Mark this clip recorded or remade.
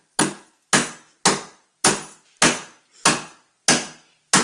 recorded